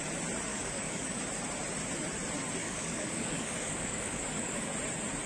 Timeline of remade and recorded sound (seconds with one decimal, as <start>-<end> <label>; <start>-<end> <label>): 0.0-0.5 recorded; 0.5-1.2 remade; 1.2-2.6 recorded; 2.6-4.7 remade; 4.7-5.3 recorded

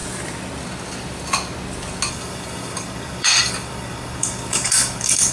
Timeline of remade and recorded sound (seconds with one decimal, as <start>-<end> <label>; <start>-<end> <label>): 0.0-2.1 recorded; 2.1-5.3 remade